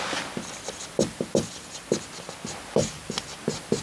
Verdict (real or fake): real